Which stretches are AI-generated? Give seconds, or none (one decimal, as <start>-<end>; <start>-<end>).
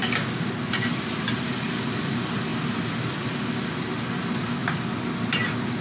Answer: 0.0-0.5